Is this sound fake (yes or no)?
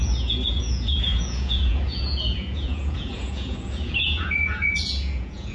yes